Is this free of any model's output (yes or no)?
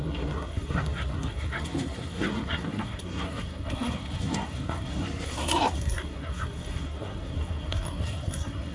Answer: no